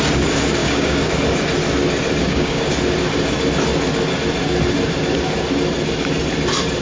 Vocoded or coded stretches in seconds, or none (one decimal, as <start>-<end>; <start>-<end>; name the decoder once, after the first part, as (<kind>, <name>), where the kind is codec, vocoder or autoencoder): 0.6-1.1 (codec, DAC); 2.2-2.7